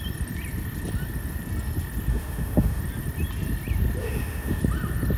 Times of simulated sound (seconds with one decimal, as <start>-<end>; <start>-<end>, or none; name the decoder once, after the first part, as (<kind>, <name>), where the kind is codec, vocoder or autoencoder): 2.1-2.8 (autoencoder, DAC-VAE); 4.0-4.6